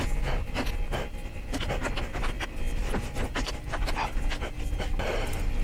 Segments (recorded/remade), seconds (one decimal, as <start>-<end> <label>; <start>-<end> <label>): 0.0-2.8 recorded; 2.8-5.1 remade; 5.1-5.6 recorded